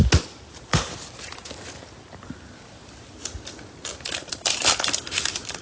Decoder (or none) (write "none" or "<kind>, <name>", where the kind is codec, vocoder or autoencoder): none